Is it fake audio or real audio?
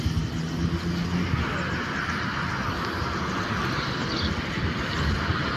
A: real